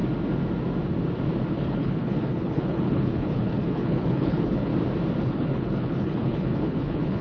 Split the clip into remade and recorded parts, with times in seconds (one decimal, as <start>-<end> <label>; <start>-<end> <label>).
0.0-1.5 recorded; 1.5-4.7 remade; 4.7-5.2 recorded; 5.2-7.2 remade